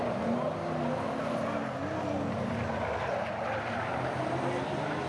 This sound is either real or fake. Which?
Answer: real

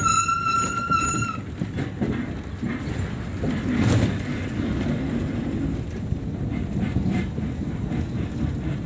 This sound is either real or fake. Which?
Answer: real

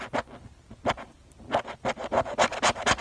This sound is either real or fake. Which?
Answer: real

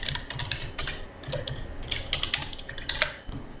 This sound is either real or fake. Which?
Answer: real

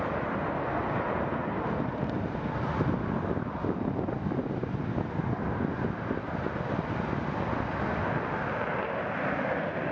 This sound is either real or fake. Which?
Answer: real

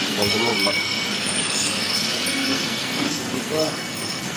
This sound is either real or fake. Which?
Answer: fake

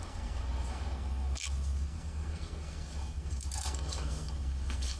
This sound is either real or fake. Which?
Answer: fake